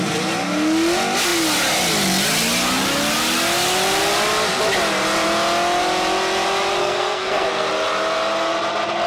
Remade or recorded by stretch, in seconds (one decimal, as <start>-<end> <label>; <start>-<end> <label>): 0.0-6.8 recorded; 6.8-7.7 remade; 7.7-9.1 recorded